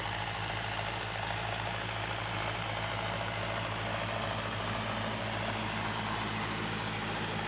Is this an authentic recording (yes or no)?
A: yes